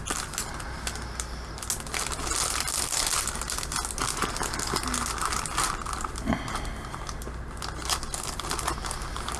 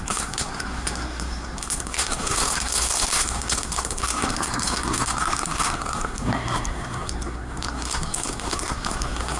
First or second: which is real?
first